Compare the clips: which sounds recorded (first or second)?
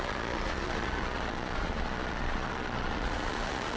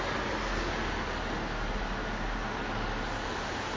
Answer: second